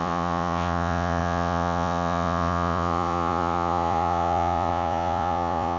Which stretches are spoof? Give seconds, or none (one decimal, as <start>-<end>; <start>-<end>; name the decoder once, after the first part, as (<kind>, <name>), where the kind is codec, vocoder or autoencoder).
0.0-5.8 (vocoder, Vocos)